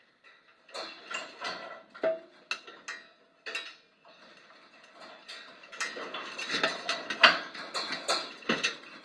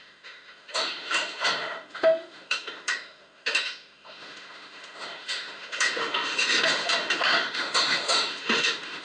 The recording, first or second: first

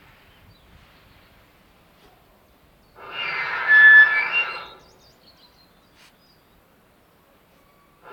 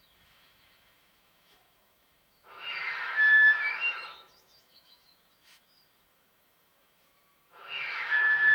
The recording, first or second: first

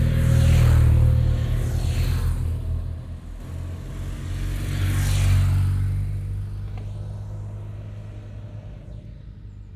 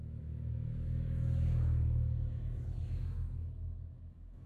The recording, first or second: first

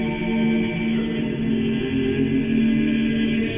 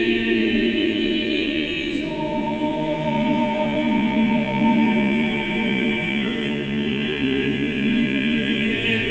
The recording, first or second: first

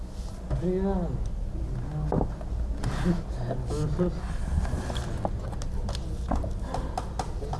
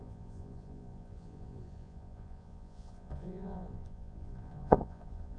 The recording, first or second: first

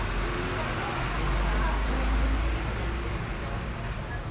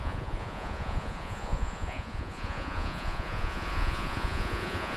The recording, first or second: first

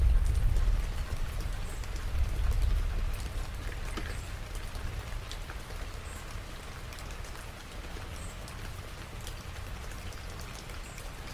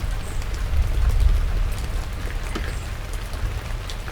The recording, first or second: second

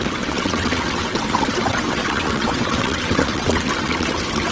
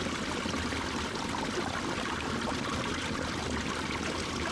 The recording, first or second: second